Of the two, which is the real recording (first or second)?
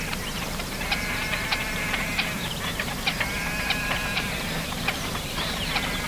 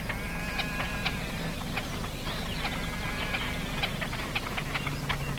second